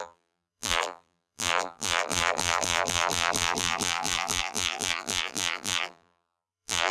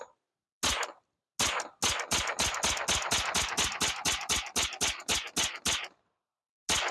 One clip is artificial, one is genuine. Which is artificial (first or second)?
first